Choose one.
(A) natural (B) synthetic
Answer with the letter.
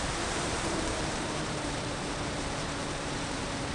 B